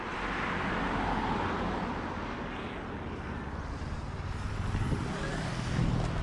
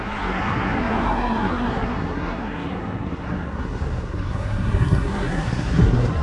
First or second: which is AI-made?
second